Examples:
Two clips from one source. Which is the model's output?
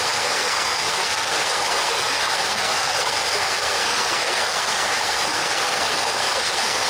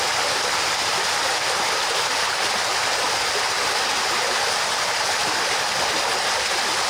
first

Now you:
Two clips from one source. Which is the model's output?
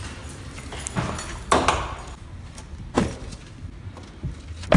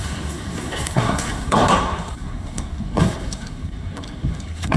second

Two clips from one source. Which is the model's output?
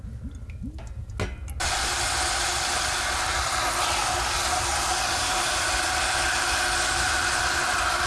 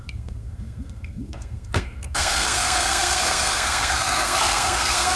second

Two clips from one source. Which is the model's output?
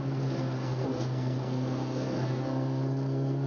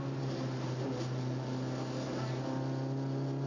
first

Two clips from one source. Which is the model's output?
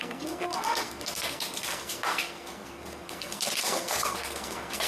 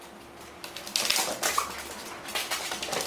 first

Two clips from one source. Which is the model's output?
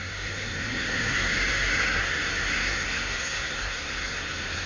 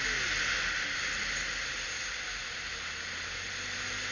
first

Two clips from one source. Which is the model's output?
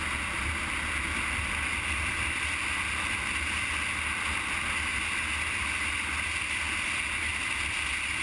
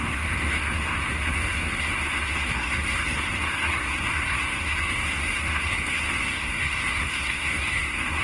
second